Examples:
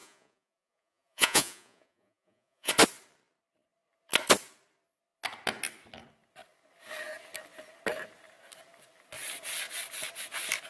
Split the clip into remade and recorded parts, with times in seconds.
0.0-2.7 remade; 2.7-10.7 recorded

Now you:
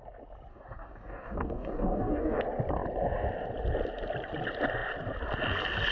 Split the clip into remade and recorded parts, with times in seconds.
0.0-0.5 recorded; 0.5-2.4 remade; 2.4-5.9 recorded

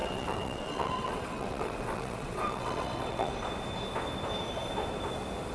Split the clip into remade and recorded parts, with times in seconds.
0.0-3.3 remade; 3.3-5.5 recorded

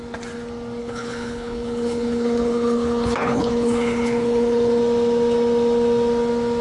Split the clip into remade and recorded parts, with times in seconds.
0.0-0.8 recorded; 0.8-4.8 remade; 4.8-6.6 recorded

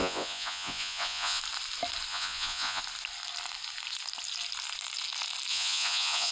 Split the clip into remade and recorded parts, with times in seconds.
0.0-1.4 remade; 1.4-2.1 recorded; 2.1-2.8 remade; 2.8-5.5 recorded; 5.5-6.3 remade

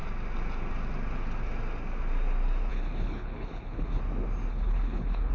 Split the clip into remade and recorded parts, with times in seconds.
0.0-2.7 recorded; 2.7-4.0 remade; 4.0-4.5 recorded; 4.5-5.3 remade

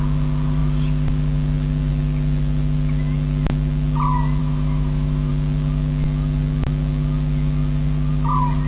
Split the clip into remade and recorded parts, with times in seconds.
0.0-4.4 recorded; 4.4-5.3 remade; 5.3-8.7 recorded

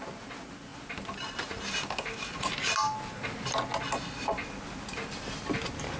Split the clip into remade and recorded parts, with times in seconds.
0.0-6.0 recorded